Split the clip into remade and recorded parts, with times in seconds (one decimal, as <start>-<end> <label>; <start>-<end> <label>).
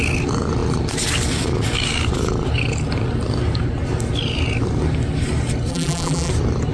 0.0-5.7 recorded; 5.7-6.3 remade; 6.3-6.7 recorded